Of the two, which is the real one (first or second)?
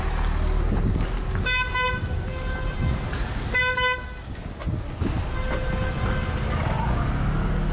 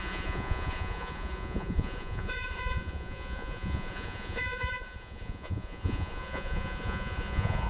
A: first